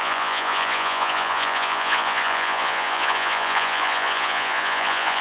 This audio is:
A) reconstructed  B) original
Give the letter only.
A